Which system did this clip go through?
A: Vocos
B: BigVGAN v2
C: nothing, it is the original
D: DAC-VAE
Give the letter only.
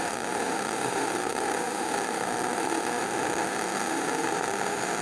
D